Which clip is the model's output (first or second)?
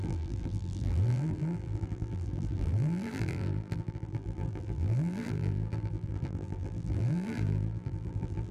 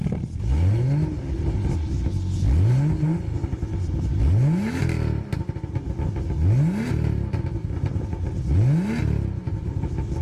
first